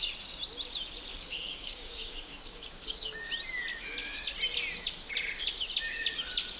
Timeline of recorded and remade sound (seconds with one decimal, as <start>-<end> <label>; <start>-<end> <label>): 0.0-1.1 recorded; 1.1-3.3 remade; 3.3-6.6 recorded